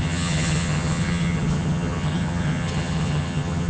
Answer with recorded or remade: remade